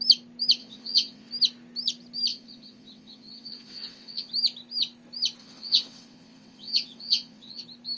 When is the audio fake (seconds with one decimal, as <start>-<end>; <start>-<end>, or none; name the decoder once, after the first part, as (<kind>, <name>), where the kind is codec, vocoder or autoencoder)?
0.6-1.3 (vocoder, WaveNeXt); 2.3-4.3; 5.4-7.6